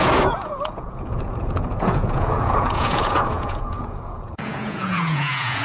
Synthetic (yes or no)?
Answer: yes